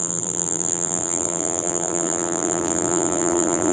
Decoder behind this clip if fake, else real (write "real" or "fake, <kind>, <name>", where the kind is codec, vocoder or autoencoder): fake, vocoder, BigVGAN v2